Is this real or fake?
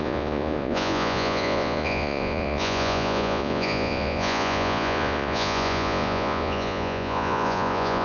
fake